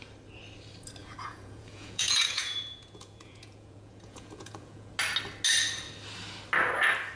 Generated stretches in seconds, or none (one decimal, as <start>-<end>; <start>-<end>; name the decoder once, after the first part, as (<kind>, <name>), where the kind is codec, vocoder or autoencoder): 1.0-4.9 (vocoder, Vocos)